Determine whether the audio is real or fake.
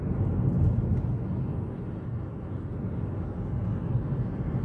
real